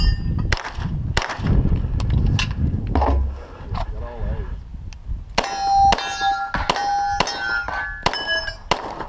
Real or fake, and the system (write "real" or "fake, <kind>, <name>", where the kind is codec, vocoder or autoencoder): real